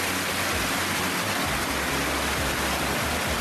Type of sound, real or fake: real